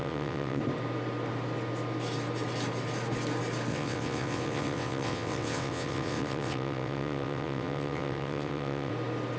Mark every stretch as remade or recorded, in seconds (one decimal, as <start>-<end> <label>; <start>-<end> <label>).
0.0-0.6 remade; 0.6-3.7 recorded; 3.7-8.9 remade; 8.9-9.4 recorded